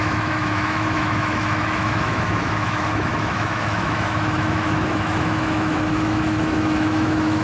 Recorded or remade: remade